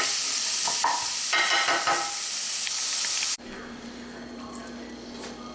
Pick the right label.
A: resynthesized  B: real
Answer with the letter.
B